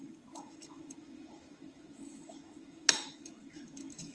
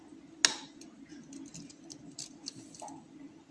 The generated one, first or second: first